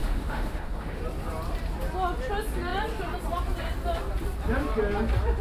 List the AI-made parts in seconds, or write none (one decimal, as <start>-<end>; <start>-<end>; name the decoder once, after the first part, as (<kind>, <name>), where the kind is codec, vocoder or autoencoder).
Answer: 0.0-1.0 (autoencoder, DAC-VAE)